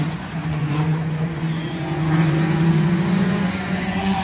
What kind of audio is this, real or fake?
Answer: fake